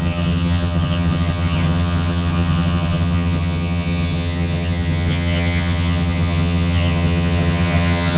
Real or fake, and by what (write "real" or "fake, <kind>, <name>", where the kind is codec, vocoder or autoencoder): fake, vocoder, HiFi-GAN